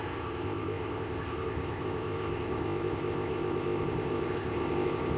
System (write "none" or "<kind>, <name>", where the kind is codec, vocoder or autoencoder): codec, ZipCodec